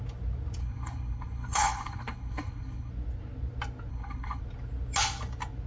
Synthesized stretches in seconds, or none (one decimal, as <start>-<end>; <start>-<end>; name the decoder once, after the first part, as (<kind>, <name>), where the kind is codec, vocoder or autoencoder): 0.6-2.9 (codec, HILCodec); 3.9-4.4